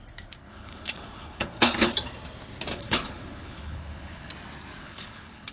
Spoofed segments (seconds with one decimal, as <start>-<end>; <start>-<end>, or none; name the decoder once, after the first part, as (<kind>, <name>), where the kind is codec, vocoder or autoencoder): 0.4-1.9 (codec, HILCodec); 2.7-4.3; 4.8-5.5